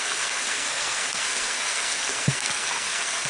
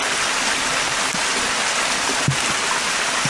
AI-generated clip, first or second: first